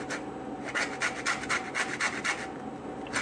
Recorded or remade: recorded